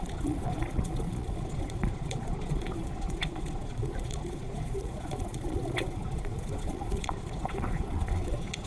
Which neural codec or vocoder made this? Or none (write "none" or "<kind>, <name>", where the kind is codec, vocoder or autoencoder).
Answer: vocoder, Vocos